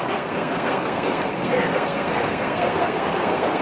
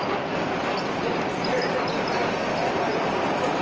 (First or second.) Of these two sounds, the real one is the second